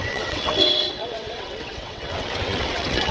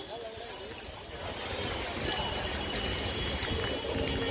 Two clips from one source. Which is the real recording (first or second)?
second